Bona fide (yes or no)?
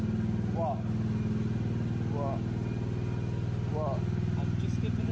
yes